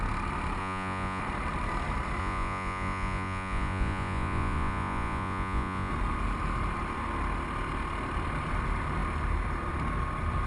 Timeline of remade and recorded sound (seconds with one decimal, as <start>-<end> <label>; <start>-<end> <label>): 0.0-0.6 recorded; 0.6-1.2 remade; 1.2-2.2 recorded; 2.2-5.9 remade; 5.9-10.5 recorded